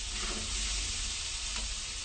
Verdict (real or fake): real